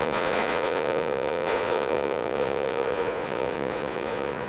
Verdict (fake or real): fake